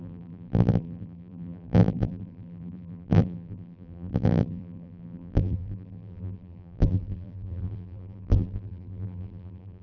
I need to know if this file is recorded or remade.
remade